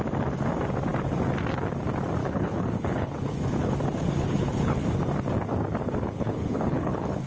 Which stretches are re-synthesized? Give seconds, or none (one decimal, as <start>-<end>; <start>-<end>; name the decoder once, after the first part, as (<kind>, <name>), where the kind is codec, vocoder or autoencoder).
2.2-3.7 (codec, HILCodec); 4.2-5.0; 5.8-7.3